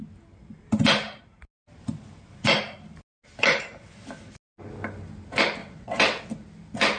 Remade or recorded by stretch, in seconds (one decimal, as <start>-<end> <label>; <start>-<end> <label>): 0.0-5.6 recorded; 5.6-6.3 remade; 6.3-7.0 recorded